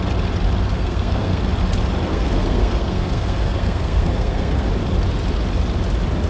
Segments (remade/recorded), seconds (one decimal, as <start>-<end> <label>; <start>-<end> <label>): 0.0-0.7 recorded; 0.7-1.4 remade; 1.4-2.1 recorded; 2.1-4.7 remade; 4.7-6.3 recorded